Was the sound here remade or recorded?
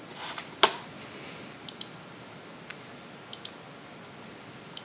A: recorded